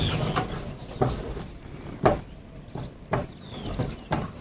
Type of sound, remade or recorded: recorded